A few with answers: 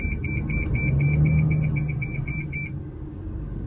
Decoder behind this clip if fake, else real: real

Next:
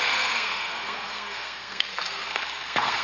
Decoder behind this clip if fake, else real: fake, codec, SNAC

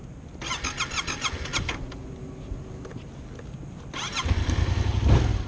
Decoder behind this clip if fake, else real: real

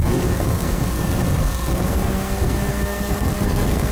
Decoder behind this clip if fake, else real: fake, codec, SNAC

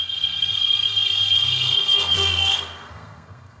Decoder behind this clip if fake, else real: fake, codec, SNAC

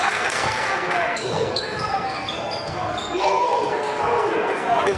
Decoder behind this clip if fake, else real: fake, codec, SNAC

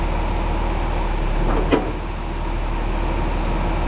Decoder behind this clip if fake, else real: real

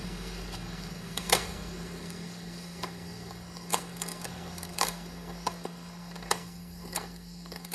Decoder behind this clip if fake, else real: fake, codec, SNAC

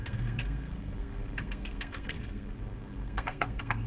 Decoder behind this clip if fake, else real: fake, codec, SNAC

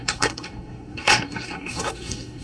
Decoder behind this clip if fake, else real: fake, codec, SNAC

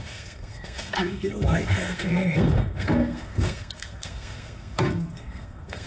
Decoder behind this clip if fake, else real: fake, codec, SNAC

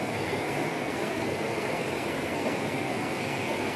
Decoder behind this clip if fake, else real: fake, codec, SNAC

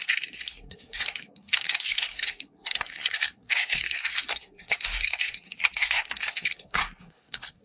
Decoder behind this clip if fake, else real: fake, codec, SNAC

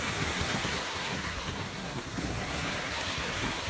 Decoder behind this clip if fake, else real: fake, codec, SNAC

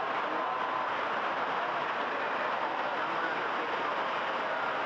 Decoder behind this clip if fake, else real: real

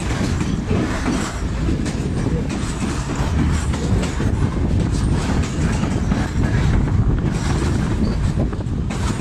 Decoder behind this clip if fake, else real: real